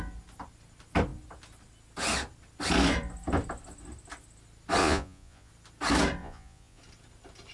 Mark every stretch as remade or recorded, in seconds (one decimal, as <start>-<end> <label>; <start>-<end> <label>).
0.0-4.8 recorded; 4.8-5.5 remade; 5.5-6.2 recorded; 6.2-6.8 remade; 6.8-7.5 recorded